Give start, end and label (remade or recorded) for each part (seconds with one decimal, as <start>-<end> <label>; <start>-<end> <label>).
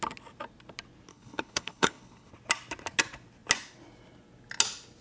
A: 0.0-1.1 recorded; 1.1-2.3 remade; 2.3-5.0 recorded